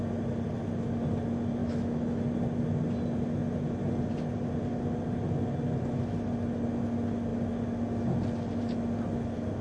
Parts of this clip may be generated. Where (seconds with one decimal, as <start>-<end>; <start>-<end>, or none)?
1.6-2.2